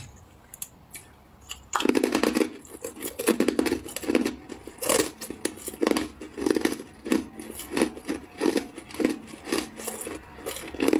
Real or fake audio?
real